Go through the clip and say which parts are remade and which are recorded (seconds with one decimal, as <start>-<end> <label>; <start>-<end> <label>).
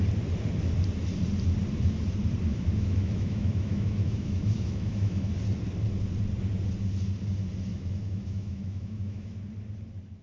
0.0-2.5 recorded; 2.5-5.3 remade; 5.3-7.7 recorded; 7.7-9.4 remade; 9.4-10.2 recorded